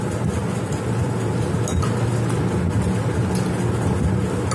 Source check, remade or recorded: recorded